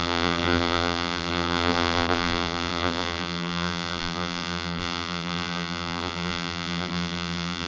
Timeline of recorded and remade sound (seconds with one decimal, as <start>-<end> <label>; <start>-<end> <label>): 0.0-7.7 remade